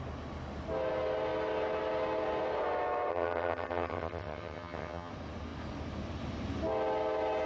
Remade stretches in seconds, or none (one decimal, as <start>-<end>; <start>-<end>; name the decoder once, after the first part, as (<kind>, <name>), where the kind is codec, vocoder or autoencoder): 3.1-5.1 (vocoder, HiFi-GAN)